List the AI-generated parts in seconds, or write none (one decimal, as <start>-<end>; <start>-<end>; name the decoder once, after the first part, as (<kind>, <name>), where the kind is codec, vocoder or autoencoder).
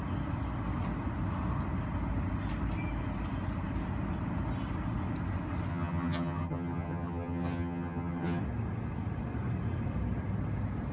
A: 5.7-8.4 (vocoder, HiFi-GAN)